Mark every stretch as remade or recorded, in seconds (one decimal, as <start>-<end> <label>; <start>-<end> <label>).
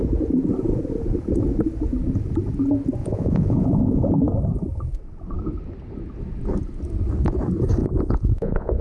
0.0-3.0 recorded; 3.0-4.2 remade; 4.2-7.8 recorded; 7.8-8.8 remade